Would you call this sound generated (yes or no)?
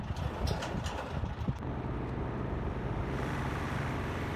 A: no